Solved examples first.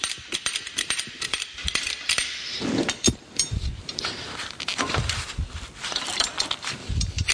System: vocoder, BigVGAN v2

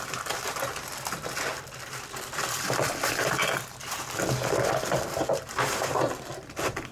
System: vocoder, BigVGAN v2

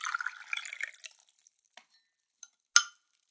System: none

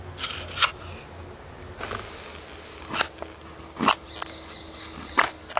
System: none